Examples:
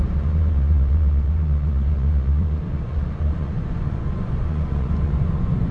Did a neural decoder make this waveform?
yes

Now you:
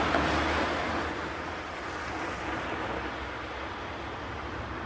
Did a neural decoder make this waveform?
no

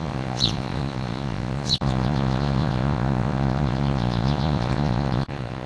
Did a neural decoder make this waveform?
yes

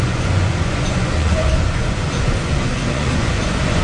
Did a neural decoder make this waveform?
yes